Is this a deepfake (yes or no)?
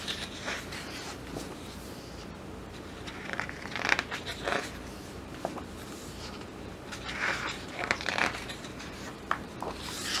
yes